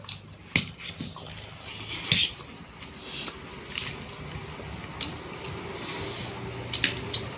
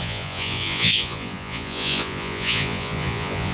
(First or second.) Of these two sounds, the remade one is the second